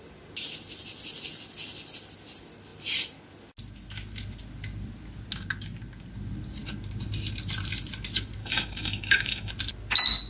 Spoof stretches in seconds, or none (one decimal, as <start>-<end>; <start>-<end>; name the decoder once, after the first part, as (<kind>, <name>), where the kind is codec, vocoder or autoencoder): 8.4-9.5 (codec, DAC)

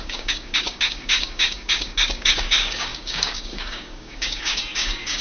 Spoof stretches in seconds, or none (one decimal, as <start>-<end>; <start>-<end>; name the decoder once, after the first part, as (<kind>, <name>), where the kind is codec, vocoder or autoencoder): 0.0-5.2 (codec, DAC)

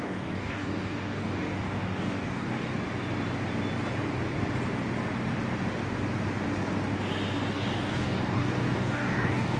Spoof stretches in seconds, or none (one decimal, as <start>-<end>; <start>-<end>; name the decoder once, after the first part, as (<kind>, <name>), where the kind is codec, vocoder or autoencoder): 0.0-2.7 (codec, DAC); 7.5-9.6

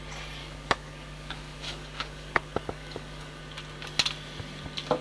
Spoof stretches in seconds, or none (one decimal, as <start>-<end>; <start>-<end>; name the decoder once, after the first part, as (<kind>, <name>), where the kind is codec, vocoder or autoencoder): 0.4-3.4 (codec, DAC)

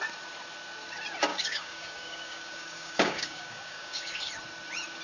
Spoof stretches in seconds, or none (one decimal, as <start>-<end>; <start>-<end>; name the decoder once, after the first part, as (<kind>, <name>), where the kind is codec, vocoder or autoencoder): 1.3-4.3 (codec, DAC)

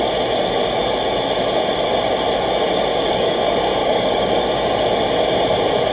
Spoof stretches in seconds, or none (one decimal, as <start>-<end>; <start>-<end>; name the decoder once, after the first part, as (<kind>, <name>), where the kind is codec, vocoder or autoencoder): 2.9-3.4 (codec, DAC); 3.8-4.8

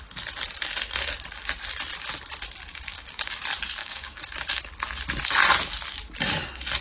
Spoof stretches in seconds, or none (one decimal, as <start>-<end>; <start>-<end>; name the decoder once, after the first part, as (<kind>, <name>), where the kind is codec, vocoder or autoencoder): 2.7-3.4 (codec, DAC); 3.8-4.6